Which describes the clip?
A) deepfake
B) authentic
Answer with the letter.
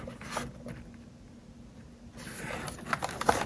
B